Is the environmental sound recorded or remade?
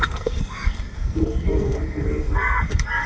remade